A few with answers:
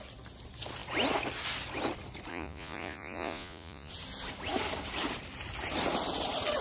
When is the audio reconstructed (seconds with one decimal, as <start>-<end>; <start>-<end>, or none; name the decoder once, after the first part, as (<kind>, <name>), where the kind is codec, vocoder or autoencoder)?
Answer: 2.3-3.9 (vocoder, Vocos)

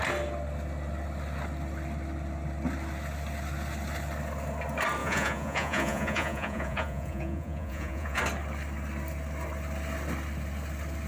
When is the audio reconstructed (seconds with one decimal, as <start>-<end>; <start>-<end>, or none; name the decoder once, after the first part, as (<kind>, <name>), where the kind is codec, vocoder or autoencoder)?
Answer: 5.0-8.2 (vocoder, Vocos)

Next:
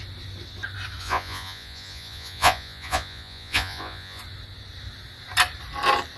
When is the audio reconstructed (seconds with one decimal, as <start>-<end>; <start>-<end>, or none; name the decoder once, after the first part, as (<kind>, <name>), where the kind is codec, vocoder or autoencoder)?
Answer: 1.0-4.2 (vocoder, Vocos)